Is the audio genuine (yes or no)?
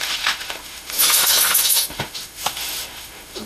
no